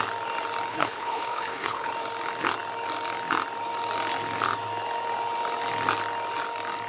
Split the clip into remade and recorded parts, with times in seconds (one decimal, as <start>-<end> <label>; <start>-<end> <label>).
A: 0.0-0.7 recorded; 0.7-1.9 remade; 1.9-6.9 recorded